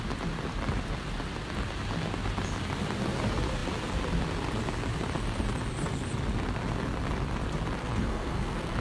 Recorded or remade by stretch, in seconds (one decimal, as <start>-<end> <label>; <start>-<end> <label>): 0.0-7.8 recorded; 7.8-8.8 remade